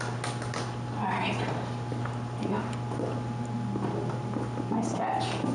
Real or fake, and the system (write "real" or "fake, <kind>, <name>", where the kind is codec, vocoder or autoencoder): real